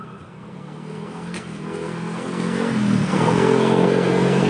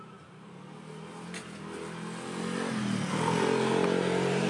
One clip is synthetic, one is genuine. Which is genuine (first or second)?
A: second